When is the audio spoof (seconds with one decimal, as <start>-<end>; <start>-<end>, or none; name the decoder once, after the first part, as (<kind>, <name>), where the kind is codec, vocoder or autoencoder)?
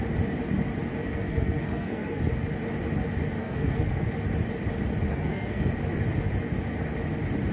0.9-2.2 (codec, SNAC); 3.4-4.1; 5.1-5.7